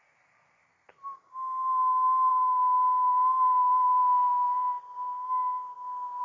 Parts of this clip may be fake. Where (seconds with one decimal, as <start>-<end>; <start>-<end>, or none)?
2.3-3.9